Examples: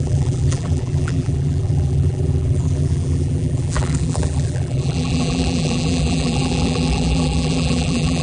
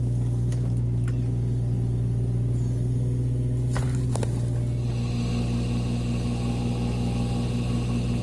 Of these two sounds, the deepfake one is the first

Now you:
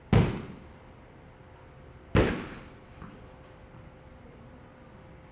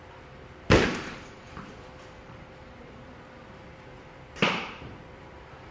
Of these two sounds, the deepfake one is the second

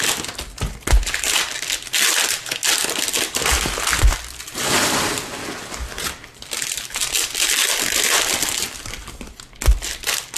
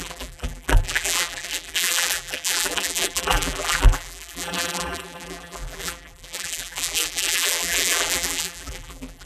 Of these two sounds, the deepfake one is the second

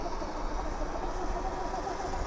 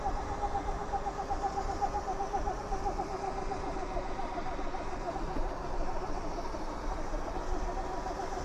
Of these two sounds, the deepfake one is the second